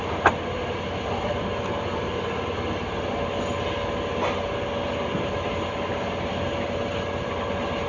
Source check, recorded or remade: recorded